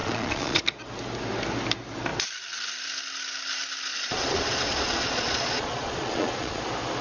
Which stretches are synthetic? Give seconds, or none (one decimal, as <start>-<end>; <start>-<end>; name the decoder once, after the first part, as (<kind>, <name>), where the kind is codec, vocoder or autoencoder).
0.0-0.6 (vocoder, Vocos); 3.9-6.6